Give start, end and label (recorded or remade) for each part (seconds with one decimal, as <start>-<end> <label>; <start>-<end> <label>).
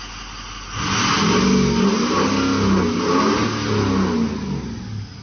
0.0-5.2 recorded